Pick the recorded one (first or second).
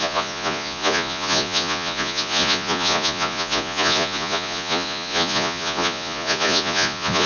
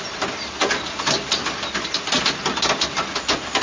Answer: second